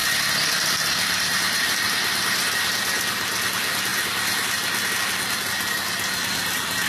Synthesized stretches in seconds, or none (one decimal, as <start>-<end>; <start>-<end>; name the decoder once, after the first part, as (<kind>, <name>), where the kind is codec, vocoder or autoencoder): 0.0-2.6 (vocoder, BigVGAN v2); 3.9-4.9

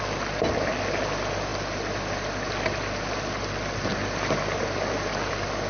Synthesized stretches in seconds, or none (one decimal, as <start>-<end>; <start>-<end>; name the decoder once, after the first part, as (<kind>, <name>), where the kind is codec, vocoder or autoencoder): none

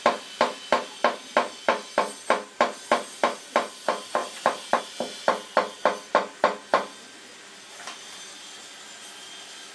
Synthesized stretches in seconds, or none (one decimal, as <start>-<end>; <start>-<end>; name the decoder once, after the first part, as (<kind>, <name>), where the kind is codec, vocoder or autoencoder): none

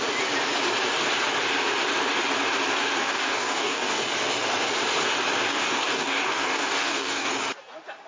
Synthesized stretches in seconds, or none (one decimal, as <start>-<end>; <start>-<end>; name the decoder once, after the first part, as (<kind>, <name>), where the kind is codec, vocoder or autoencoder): 3.0-4.0 (codec, DAC); 5.5-7.3